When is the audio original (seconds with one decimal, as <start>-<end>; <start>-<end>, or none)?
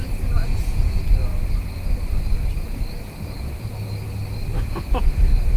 1.3-4.7